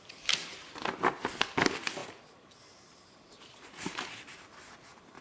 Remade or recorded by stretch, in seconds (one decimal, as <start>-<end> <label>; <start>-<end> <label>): 0.0-2.0 recorded; 2.0-3.3 remade; 3.3-5.2 recorded